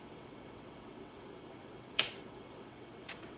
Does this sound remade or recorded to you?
remade